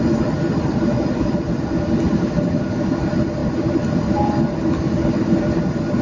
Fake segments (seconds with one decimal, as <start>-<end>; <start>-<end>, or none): none